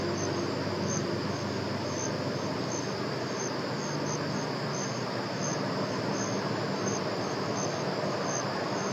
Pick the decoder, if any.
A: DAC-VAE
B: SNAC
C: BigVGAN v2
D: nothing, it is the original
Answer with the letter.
D